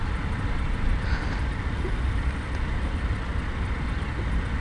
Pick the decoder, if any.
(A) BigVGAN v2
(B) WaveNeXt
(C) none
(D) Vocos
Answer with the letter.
C